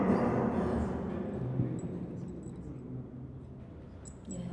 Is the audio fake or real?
real